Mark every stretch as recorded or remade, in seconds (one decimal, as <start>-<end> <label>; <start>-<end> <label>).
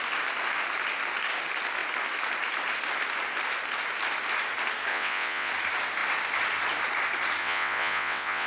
0.0-4.9 recorded; 4.9-5.5 remade; 5.5-7.4 recorded; 7.4-8.5 remade